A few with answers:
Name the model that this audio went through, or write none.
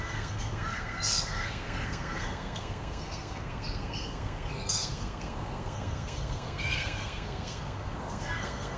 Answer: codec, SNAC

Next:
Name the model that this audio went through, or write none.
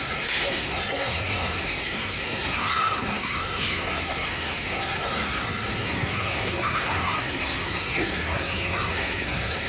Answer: codec, SNAC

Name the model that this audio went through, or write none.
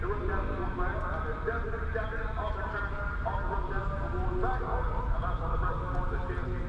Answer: none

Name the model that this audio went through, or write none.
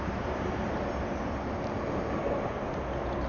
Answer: none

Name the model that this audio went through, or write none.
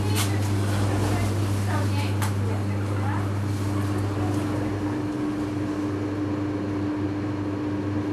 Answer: none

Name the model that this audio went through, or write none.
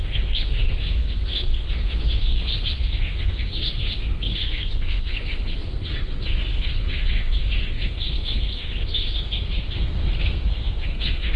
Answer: codec, SNAC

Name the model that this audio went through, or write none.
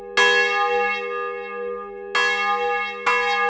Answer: none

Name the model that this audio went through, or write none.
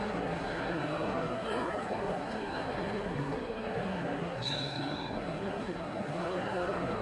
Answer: codec, SNAC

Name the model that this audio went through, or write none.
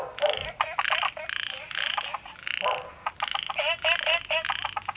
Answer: none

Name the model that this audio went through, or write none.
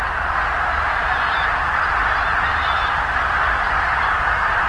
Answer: none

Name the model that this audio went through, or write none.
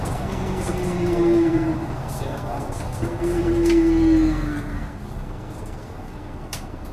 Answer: codec, SNAC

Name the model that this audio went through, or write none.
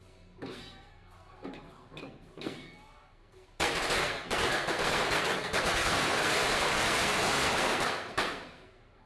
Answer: codec, SNAC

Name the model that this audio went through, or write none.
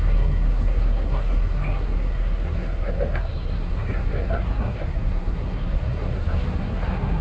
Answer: codec, SNAC